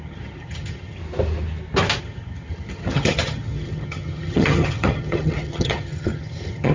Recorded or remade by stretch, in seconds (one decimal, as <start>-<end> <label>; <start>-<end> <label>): 0.0-1.0 remade; 1.0-2.0 recorded; 2.0-6.7 remade